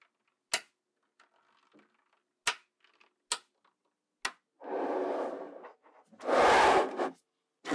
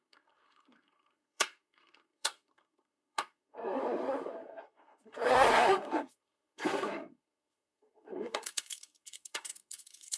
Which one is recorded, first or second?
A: first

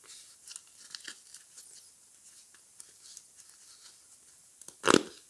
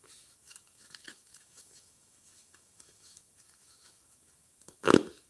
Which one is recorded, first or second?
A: first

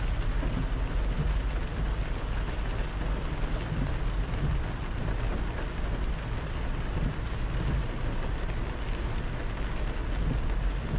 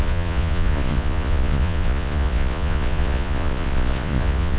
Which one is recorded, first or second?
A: first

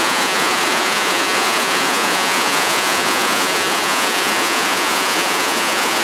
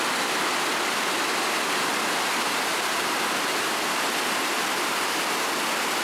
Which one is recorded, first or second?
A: second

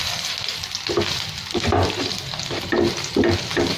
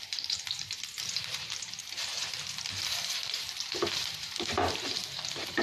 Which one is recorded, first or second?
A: first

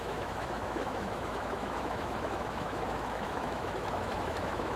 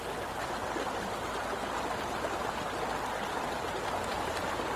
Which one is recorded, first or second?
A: second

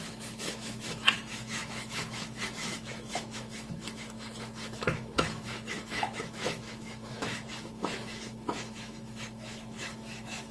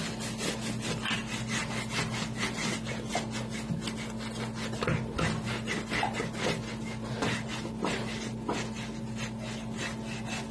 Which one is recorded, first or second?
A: second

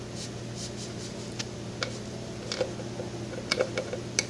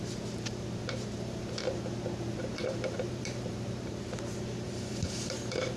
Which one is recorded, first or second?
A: first